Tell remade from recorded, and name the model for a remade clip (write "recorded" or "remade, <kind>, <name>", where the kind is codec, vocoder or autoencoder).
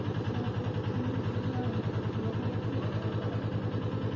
recorded